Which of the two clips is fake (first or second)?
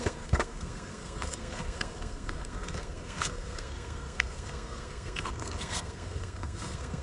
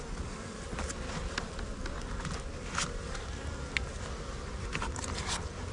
first